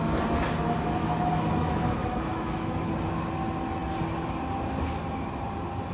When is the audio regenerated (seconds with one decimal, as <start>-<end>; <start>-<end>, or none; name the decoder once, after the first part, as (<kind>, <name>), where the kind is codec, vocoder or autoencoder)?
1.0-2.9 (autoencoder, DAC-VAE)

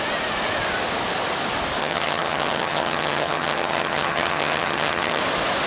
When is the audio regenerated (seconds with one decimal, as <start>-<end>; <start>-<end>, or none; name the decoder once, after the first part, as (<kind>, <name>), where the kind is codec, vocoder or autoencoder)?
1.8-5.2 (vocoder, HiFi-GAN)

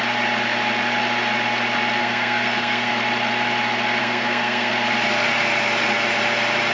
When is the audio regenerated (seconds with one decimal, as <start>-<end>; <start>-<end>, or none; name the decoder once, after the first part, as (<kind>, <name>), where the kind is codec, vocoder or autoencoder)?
2.0-2.9 (codec, SNAC); 4.0-4.7

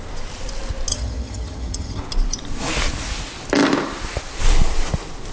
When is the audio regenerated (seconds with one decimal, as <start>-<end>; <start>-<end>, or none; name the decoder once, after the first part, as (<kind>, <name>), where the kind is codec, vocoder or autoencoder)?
0.9-2.0 (vocoder, HiFi-GAN)

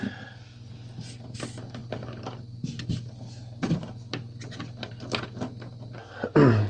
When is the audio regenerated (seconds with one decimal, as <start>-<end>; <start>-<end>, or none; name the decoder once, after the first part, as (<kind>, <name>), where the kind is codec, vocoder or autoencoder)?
none